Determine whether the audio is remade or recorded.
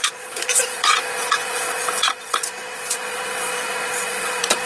remade